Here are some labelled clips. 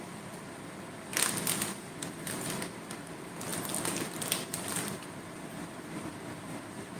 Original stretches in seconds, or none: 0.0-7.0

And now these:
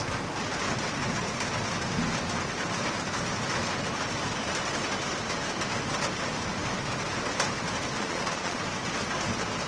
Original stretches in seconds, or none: 0.0-8.0; 8.6-9.7

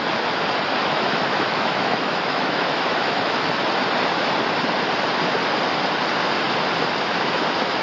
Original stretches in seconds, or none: 0.0-0.8; 3.5-7.8

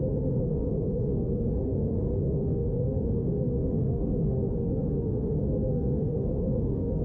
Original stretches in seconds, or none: none

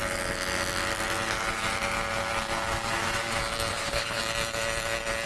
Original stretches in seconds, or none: 0.0-3.7; 4.2-5.3

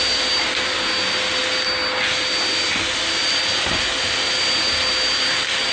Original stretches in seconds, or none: 0.0-5.7